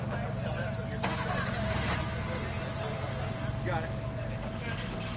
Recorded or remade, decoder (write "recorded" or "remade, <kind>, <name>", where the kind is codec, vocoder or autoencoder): recorded